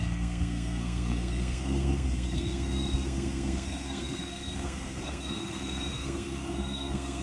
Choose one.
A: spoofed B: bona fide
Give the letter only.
A